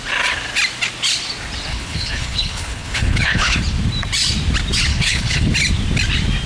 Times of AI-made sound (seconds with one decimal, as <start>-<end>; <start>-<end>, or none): 1.7-3.6; 4.9-5.5